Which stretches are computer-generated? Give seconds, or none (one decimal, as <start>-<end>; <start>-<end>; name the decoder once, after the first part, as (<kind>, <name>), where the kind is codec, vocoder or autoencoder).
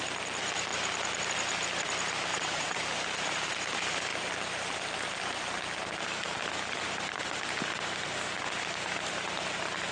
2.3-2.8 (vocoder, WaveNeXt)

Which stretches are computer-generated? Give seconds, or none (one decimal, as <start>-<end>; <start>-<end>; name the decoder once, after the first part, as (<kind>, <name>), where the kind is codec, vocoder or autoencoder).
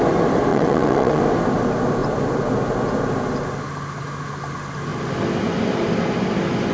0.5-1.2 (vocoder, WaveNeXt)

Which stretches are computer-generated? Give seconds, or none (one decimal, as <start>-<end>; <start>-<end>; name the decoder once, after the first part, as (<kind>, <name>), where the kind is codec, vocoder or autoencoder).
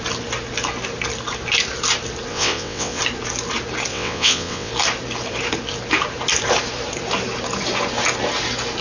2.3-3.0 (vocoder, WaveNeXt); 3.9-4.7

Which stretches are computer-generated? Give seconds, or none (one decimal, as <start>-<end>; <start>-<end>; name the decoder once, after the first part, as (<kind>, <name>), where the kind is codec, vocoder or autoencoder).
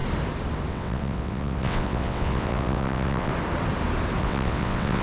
0.7-3.3 (vocoder, WaveNeXt); 4.2-5.0